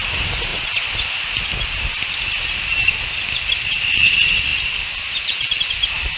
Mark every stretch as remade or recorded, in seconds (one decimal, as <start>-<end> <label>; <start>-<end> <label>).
0.0-6.2 recorded

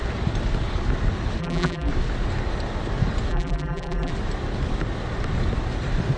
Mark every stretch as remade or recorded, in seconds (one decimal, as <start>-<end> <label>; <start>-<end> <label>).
0.0-1.4 recorded; 1.4-1.9 remade; 1.9-3.3 recorded; 3.3-4.1 remade; 4.1-6.2 recorded

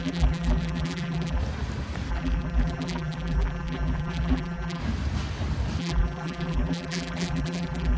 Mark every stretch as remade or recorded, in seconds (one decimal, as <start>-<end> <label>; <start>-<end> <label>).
0.0-1.4 remade; 1.4-2.1 recorded; 2.1-4.8 remade; 4.8-5.8 recorded; 5.8-8.0 remade

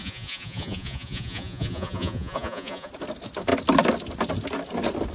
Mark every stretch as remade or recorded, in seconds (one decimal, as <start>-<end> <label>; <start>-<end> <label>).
0.0-2.9 remade; 2.9-5.1 recorded

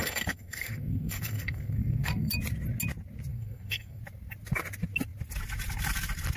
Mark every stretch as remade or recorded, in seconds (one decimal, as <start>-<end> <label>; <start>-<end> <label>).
0.0-2.3 remade; 2.3-3.3 recorded; 3.3-4.0 remade; 4.0-6.4 recorded

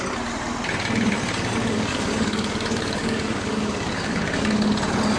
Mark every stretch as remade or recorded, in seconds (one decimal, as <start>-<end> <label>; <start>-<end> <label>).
0.0-1.6 recorded; 1.6-4.7 remade; 4.7-5.2 recorded

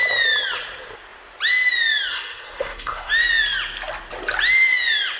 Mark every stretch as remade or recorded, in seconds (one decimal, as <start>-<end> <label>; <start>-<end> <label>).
0.0-2.1 recorded; 2.1-3.1 remade; 3.1-5.2 recorded

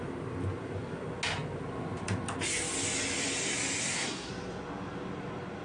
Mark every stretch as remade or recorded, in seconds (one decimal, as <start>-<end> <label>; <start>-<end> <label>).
0.0-3.8 recorded; 3.8-4.3 remade; 4.3-5.6 recorded